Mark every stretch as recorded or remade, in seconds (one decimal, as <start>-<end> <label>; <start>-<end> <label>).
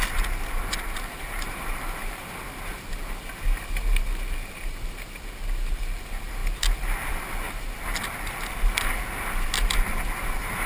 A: 0.0-1.1 recorded; 1.1-2.4 remade; 2.4-10.7 recorded